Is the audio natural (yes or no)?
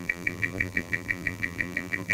no